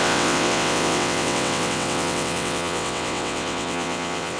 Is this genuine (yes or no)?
no